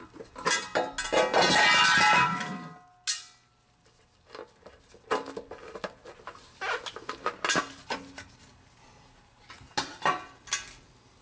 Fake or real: real